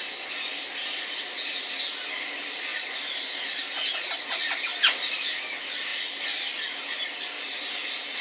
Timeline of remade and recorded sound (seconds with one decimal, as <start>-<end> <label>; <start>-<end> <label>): 0.0-2.7 recorded; 2.7-3.6 remade; 3.6-4.7 recorded; 4.7-5.4 remade; 5.4-8.2 recorded